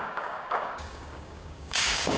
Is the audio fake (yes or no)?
yes